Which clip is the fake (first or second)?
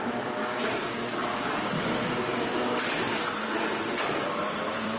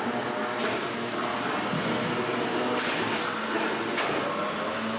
first